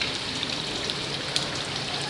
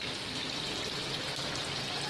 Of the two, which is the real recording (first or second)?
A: second